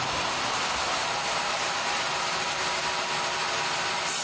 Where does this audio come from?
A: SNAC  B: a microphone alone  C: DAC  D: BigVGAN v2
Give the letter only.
B